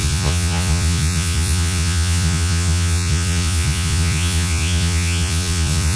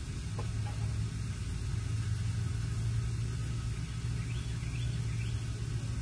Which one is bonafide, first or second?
second